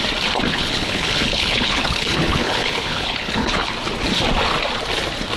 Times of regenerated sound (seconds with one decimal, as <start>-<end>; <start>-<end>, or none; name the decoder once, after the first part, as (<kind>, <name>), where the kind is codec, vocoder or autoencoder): 0.5-3.7 (codec, HILCodec)